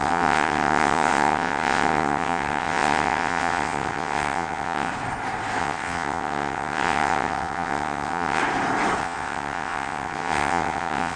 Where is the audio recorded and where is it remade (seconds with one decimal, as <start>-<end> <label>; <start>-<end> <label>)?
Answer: 0.0-4.9 remade; 4.9-5.6 recorded; 5.6-8.4 remade; 8.4-9.0 recorded; 9.0-11.2 remade